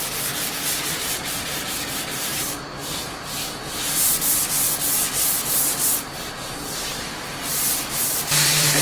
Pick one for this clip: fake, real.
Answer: fake